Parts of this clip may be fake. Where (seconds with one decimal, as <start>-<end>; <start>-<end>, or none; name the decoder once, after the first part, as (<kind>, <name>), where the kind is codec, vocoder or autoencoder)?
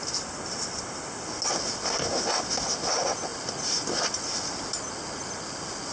none